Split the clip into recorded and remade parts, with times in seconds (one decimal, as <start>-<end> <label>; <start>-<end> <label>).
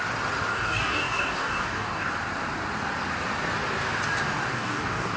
0.0-0.5 recorded; 0.5-2.1 remade; 2.1-4.5 recorded; 4.5-5.2 remade